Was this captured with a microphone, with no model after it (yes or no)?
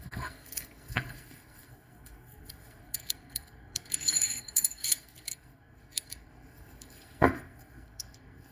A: no